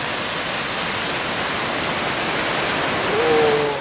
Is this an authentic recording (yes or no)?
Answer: yes